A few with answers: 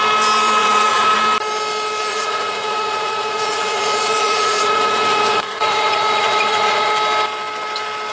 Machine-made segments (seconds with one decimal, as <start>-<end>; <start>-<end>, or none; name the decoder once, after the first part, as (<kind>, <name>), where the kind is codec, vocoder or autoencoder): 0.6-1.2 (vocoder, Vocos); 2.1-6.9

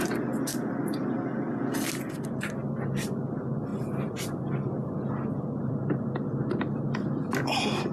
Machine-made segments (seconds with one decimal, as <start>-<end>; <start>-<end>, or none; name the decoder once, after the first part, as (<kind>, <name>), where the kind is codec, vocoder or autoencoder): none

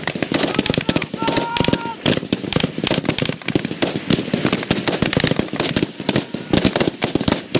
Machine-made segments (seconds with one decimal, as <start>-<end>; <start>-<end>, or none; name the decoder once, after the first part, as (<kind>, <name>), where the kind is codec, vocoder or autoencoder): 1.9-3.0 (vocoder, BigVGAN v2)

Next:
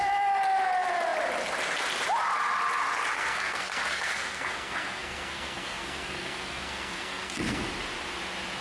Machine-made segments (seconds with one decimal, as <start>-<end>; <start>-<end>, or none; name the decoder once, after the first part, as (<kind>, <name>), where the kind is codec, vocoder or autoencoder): 3.1-7.7 (codec, SNAC)